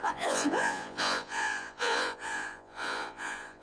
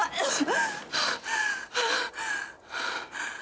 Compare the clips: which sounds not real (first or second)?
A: first